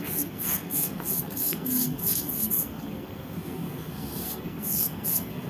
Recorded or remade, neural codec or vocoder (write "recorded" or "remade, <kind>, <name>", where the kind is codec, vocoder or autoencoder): remade, codec, SNAC